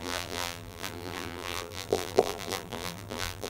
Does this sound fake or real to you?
fake